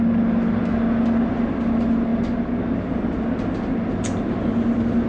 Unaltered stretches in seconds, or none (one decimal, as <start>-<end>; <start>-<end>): 0.0-5.1